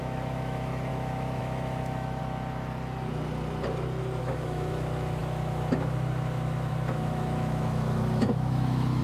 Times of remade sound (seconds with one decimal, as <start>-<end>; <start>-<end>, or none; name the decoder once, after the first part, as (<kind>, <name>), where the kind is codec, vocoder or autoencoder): 0.0-2.2 (autoencoder, DAC-VAE); 4.2-9.0

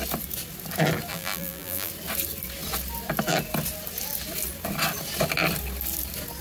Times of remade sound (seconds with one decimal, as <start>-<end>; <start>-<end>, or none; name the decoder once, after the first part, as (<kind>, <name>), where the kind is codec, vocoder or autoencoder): 1.1-1.9 (vocoder, BigVGAN v2)

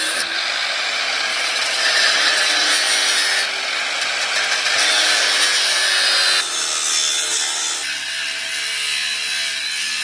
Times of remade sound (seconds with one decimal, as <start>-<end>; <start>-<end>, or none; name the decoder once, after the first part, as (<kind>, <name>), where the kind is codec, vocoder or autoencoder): 1.3-2.7 (vocoder, WaveNeXt)